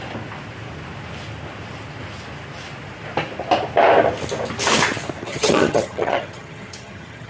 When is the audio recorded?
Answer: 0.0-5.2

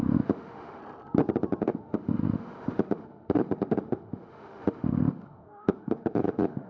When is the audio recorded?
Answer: 0.8-1.6

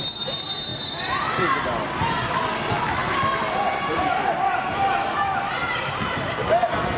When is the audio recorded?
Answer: 0.0-3.0; 6.5-7.0